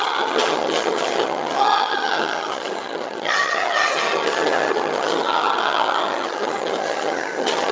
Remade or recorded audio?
remade